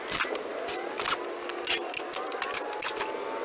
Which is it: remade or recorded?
recorded